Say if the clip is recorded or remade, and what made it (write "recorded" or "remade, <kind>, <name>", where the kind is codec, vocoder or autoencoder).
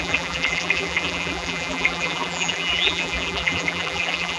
remade, vocoder, BigVGAN v2